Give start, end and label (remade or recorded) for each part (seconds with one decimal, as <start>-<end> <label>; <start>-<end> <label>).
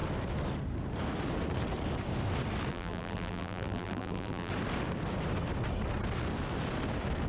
0.0-2.7 recorded; 2.7-4.5 remade; 4.5-7.3 recorded